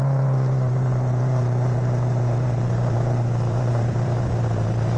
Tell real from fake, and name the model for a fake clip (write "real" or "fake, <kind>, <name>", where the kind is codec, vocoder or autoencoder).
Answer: fake, vocoder, BigVGAN v2